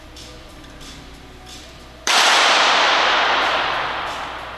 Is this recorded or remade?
remade